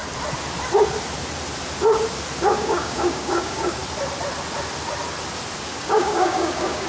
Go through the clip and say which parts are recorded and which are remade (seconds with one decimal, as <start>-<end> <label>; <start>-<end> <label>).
0.0-2.5 recorded; 2.5-3.8 remade; 3.8-5.7 recorded; 5.7-6.9 remade